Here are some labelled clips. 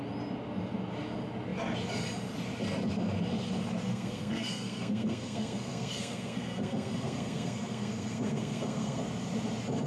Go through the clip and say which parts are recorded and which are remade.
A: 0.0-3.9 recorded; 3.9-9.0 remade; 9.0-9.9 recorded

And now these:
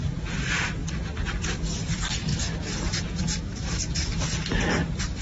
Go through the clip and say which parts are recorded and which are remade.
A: 0.0-0.8 remade; 0.8-1.9 recorded; 1.9-5.2 remade

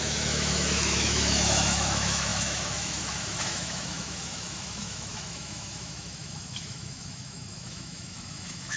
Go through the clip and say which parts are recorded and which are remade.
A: 0.0-8.8 remade